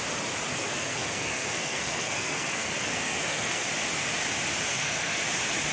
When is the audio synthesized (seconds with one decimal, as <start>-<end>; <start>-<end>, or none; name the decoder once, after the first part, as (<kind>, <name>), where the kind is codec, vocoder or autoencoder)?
0.5-3.7 (codec, SNAC); 4.7-5.2